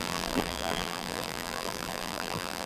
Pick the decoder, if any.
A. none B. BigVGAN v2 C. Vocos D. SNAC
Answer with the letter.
B